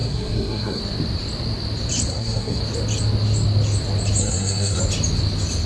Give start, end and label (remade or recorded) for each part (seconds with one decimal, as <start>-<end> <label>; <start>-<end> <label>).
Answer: 0.0-0.8 remade; 0.8-2.1 recorded; 2.1-2.6 remade; 2.6-4.2 recorded; 4.2-4.8 remade; 4.8-5.7 recorded